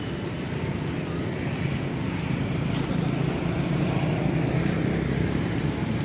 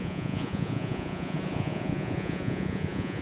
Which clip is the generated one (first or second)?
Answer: second